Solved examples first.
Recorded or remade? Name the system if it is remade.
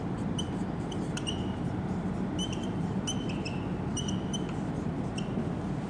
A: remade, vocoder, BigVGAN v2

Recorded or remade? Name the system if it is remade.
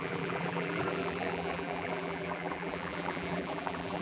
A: remade, vocoder, BigVGAN v2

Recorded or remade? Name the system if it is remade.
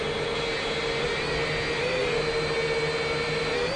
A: recorded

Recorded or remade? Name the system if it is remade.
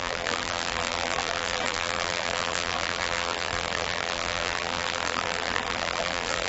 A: remade, vocoder, BigVGAN v2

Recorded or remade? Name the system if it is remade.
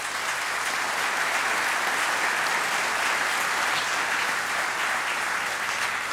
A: recorded